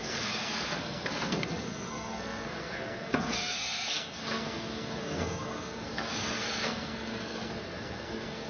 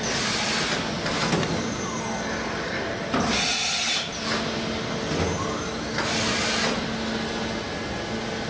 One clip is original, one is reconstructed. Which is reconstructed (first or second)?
first